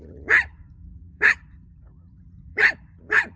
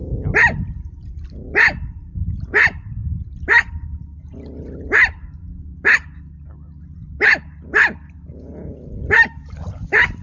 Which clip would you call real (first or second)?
second